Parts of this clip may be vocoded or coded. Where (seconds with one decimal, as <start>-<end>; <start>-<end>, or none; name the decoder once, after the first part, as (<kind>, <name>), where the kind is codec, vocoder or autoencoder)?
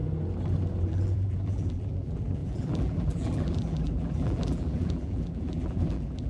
0.8-6.3 (vocoder, BigVGAN v2)